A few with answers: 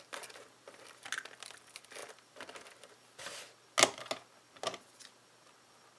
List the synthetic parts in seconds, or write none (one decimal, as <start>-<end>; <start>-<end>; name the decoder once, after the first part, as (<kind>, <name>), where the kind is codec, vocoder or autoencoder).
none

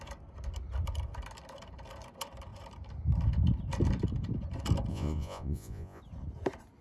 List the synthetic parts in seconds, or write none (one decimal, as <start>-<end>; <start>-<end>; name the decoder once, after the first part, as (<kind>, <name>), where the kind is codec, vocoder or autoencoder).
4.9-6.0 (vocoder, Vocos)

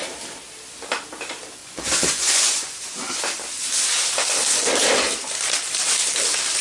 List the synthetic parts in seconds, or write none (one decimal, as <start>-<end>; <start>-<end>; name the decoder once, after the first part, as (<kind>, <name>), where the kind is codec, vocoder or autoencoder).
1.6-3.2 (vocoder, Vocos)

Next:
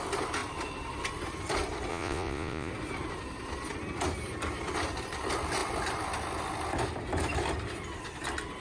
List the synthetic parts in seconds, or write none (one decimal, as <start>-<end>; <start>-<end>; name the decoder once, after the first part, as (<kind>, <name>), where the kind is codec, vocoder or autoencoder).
1.9-2.7 (vocoder, Vocos)